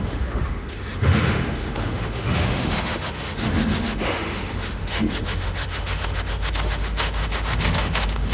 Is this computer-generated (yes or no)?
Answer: yes